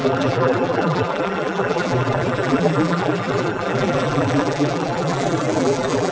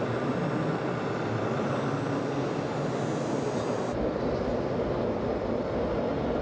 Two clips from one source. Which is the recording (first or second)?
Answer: second